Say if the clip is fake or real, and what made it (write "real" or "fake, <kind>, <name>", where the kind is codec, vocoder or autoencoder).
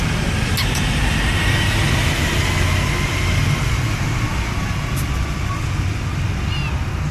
real